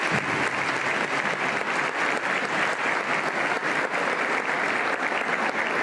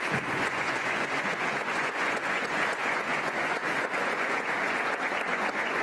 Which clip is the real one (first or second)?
first